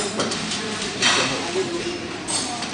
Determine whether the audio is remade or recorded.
remade